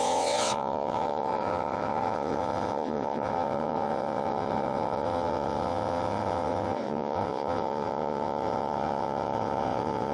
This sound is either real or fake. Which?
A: fake